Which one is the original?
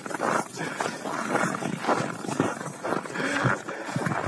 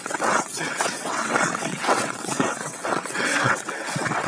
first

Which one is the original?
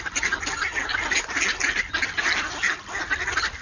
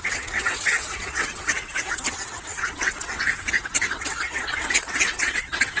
first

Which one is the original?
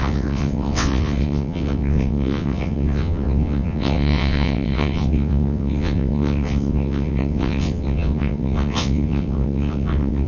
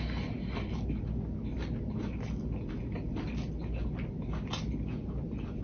second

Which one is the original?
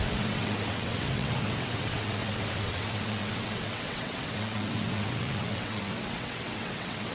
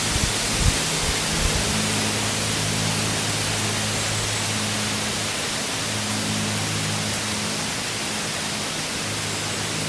second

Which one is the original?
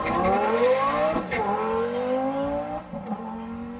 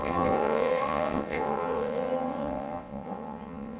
first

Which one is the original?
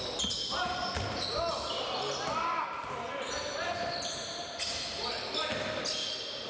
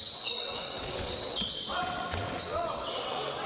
first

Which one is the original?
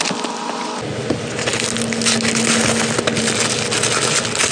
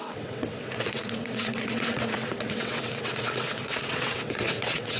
first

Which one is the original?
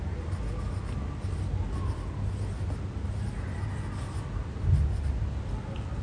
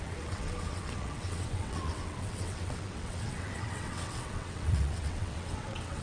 first